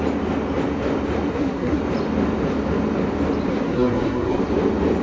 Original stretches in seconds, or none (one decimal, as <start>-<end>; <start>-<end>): 0.0-1.3; 1.8-3.5; 4.4-5.0